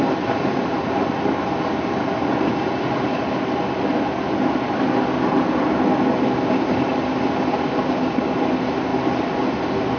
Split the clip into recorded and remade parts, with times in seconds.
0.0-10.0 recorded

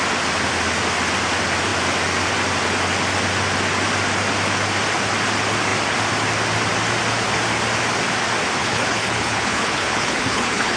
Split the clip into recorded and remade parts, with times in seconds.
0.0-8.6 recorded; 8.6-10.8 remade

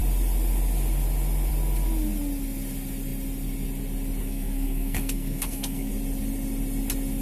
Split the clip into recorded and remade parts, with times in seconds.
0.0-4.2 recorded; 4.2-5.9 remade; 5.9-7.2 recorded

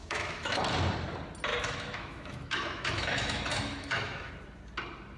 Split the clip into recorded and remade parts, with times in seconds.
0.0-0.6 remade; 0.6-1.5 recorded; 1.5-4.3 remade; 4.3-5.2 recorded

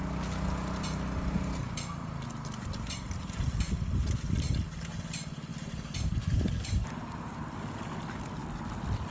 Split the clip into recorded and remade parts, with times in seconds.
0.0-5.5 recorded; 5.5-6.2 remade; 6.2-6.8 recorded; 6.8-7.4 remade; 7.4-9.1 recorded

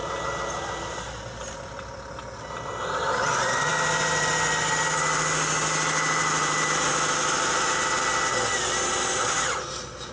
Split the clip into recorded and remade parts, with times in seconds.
0.0-6.2 recorded; 6.2-7.7 remade; 7.7-10.1 recorded